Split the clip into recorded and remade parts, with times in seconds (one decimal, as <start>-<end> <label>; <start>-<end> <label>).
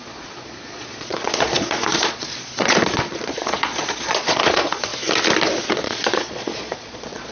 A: 0.0-4.9 remade; 4.9-5.7 recorded; 5.7-7.3 remade